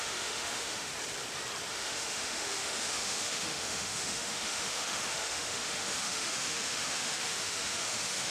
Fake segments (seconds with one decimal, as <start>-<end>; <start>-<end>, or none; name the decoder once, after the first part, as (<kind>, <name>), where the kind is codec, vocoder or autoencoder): 0.0-0.9 (autoencoder, DAC-VAE); 1.7-8.3